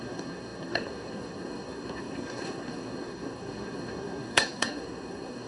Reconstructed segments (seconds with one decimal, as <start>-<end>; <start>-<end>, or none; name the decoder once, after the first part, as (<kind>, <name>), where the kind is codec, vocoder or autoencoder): 0.0-5.5 (codec, SNAC)